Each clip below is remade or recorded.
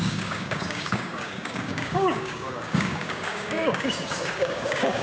remade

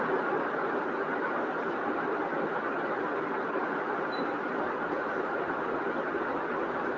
recorded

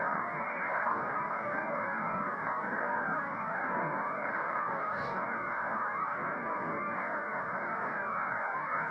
remade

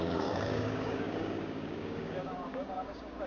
remade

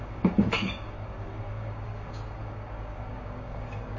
remade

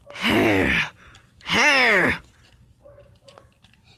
recorded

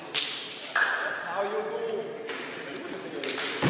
recorded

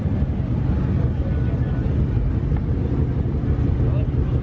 recorded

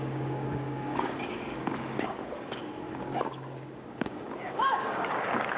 remade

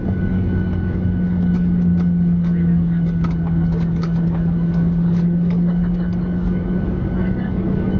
remade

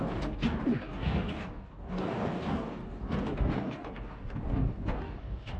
remade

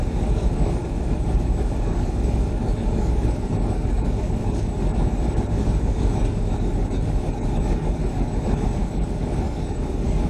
remade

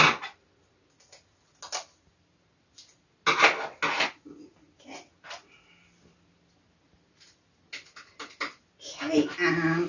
recorded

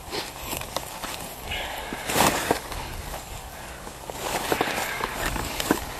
remade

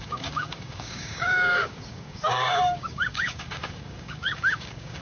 remade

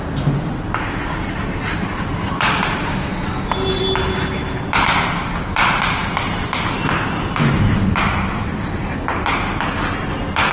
recorded